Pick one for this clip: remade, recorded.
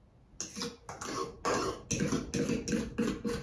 recorded